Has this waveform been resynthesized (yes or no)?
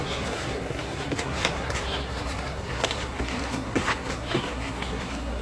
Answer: yes